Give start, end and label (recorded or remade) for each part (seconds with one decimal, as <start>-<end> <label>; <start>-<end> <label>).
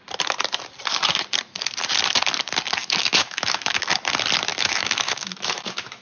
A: 0.0-2.8 recorded; 2.8-3.9 remade; 3.9-4.5 recorded; 4.5-6.0 remade